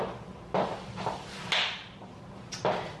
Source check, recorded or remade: recorded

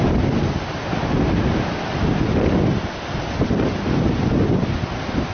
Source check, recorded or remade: recorded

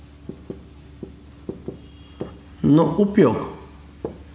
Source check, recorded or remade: recorded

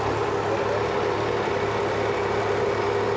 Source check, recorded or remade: recorded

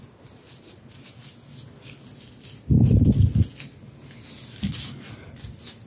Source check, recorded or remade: recorded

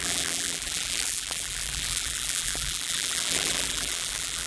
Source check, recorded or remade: remade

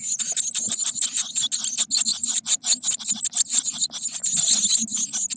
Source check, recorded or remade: recorded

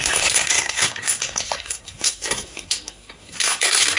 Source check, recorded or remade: remade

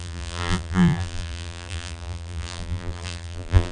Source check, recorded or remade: remade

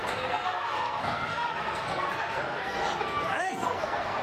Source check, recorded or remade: remade